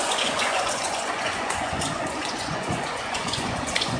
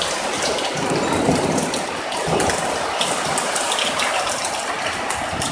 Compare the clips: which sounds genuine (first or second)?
second